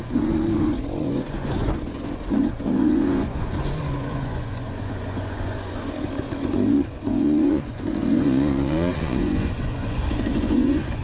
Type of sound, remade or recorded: remade